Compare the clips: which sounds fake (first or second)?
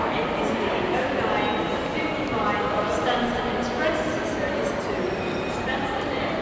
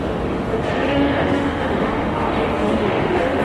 second